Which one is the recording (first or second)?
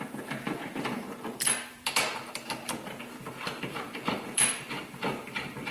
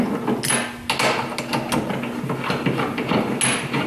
second